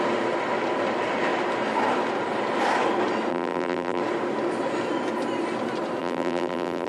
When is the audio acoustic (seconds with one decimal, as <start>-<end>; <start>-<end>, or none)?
0.0-3.3; 4.0-6.0